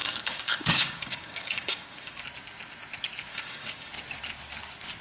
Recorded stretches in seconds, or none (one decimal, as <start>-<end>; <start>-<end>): 2.2-3.3; 3.9-5.0